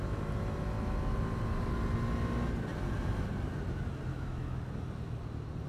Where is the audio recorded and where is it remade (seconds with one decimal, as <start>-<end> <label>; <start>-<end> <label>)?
0.0-4.1 recorded; 4.1-4.6 remade; 4.6-5.7 recorded